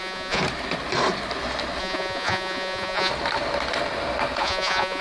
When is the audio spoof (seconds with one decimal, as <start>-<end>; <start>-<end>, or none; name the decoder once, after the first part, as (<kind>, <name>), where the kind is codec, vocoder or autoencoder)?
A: 0.0-0.4 (vocoder, Vocos); 1.8-3.1; 4.4-5.0